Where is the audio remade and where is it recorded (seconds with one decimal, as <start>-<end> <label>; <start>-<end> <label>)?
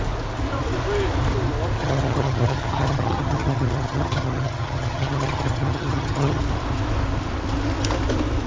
0.0-1.8 recorded; 1.8-6.4 remade; 6.4-8.5 recorded